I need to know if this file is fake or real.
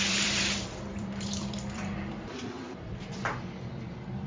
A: fake